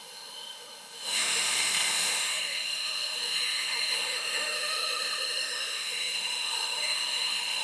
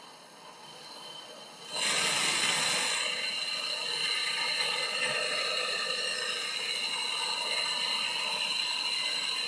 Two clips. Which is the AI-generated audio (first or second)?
first